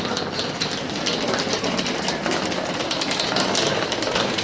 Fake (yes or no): no